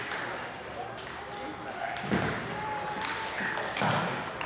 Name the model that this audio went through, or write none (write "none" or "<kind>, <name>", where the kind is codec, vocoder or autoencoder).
none